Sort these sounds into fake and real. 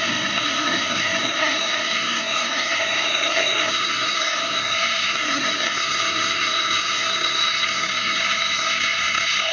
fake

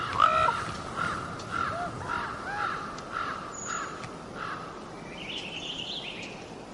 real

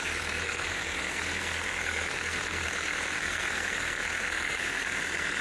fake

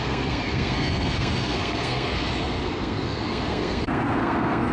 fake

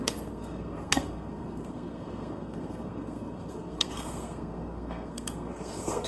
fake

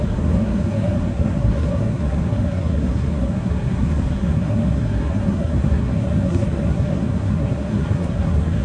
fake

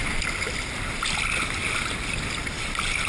real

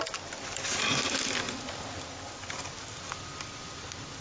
real